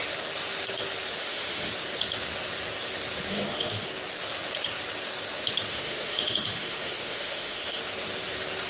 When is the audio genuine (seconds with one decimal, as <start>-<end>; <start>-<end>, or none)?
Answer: 0.0-1.2; 1.7-3.3; 3.9-5.7; 7.8-8.7